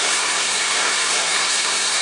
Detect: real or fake fake